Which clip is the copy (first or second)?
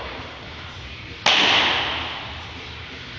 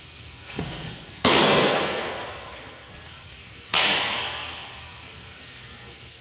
second